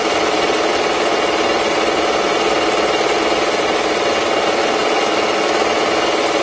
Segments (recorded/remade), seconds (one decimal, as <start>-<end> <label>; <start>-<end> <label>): 0.0-4.8 recorded; 4.8-5.6 remade; 5.6-6.4 recorded